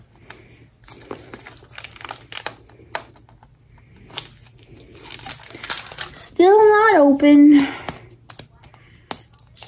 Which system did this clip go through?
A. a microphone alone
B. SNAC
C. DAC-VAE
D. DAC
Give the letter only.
A